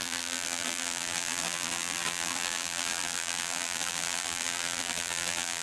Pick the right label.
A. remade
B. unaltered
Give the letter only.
A